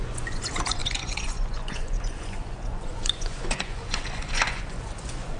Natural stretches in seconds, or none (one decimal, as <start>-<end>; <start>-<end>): none